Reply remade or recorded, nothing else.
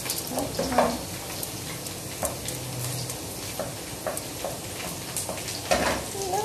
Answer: recorded